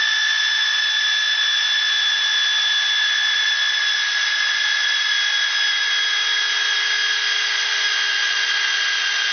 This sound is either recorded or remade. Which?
recorded